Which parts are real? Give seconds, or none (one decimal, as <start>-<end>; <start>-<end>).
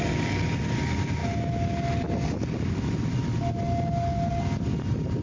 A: 0.0-5.2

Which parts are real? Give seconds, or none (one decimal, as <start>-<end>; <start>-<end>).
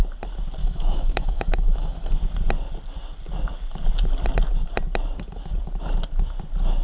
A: 0.0-0.6; 2.1-6.8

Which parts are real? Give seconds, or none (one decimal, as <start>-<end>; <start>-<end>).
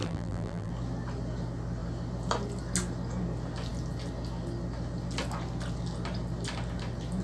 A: 0.7-7.2